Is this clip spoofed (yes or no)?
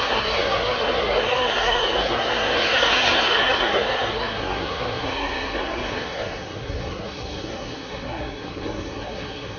yes